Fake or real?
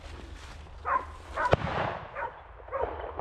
real